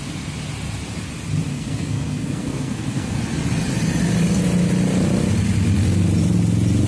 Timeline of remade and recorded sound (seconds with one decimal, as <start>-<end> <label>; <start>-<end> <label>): 0.0-1.5 recorded; 1.5-3.2 remade; 3.2-6.9 recorded